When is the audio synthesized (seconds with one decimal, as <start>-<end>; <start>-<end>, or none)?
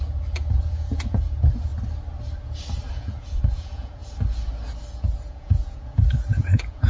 0.0-1.7; 2.9-4.0; 4.9-6.9